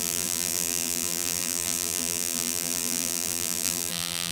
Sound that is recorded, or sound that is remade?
remade